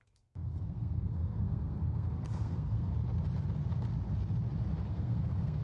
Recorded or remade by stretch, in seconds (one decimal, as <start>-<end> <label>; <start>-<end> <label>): 0.0-2.9 remade; 2.9-4.9 recorded; 4.9-5.6 remade